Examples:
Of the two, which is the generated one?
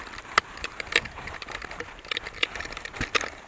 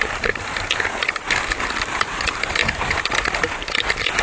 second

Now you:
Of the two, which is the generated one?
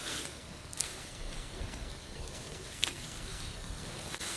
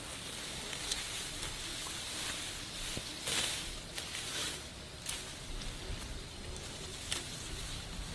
first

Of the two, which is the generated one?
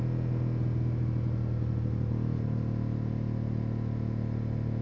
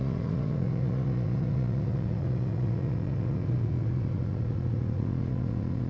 second